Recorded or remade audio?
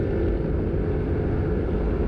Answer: recorded